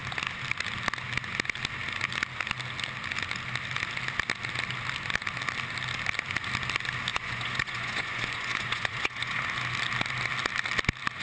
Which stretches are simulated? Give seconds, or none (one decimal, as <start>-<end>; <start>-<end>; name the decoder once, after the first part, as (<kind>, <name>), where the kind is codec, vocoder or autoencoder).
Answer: 7.1-9.4 (vocoder, Vocos)